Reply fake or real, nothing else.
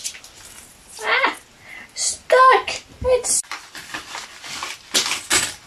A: real